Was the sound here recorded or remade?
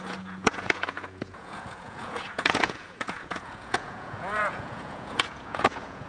remade